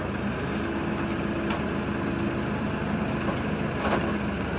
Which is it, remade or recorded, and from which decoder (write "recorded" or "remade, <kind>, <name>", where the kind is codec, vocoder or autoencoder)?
recorded